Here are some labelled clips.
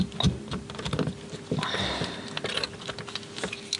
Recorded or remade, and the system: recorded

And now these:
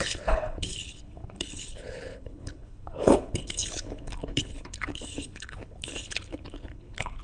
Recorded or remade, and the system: remade, codec, HILCodec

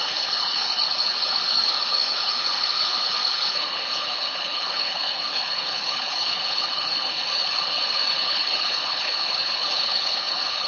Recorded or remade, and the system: remade, codec, HILCodec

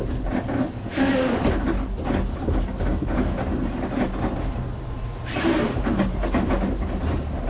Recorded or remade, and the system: recorded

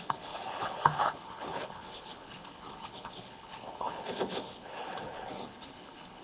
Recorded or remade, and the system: remade, codec, HILCodec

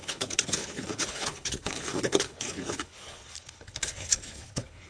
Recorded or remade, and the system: remade, codec, HILCodec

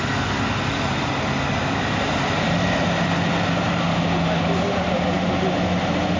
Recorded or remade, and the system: recorded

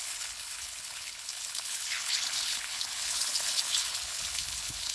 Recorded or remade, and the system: remade, codec, HILCodec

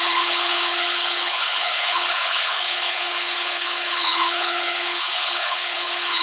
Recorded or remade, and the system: remade, codec, HILCodec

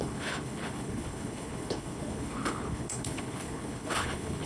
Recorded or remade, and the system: remade, codec, HILCodec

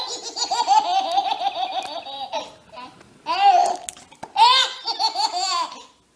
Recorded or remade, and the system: recorded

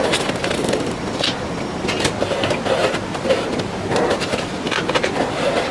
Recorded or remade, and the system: recorded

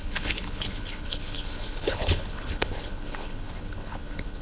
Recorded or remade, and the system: remade, codec, HILCodec